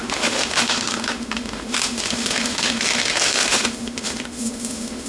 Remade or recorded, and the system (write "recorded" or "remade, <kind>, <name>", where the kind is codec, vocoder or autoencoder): remade, autoencoder, DAC-VAE